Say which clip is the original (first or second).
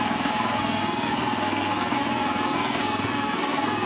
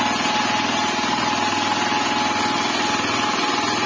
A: second